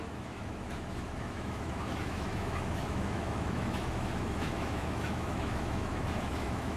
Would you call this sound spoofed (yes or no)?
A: yes